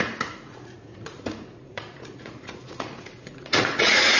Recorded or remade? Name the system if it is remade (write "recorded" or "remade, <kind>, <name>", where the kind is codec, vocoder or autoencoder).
remade, vocoder, Vocos